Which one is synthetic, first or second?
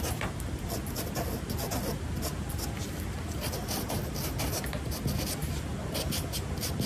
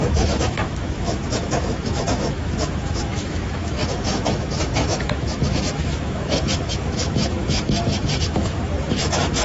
second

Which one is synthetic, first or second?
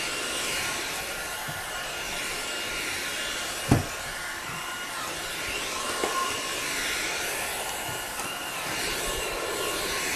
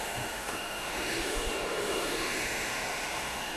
second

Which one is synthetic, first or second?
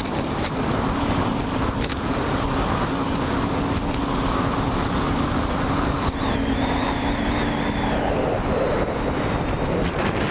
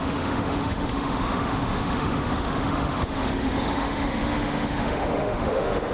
second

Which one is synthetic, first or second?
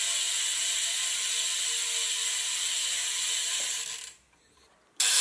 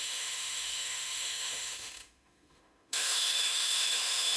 second